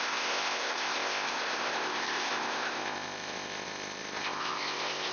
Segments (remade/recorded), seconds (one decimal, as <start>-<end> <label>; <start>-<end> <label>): 0.0-5.1 remade